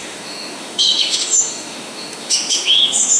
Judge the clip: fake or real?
fake